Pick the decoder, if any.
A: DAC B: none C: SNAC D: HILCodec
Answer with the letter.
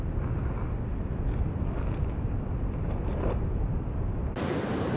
B